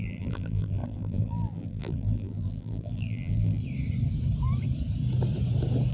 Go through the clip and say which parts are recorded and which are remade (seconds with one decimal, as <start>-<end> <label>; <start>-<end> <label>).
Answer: 0.0-3.6 remade; 3.6-5.9 recorded